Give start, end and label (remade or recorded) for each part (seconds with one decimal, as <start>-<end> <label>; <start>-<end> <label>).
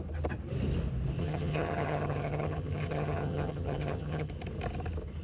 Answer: 0.0-1.2 recorded; 1.2-4.3 remade; 4.3-5.2 recorded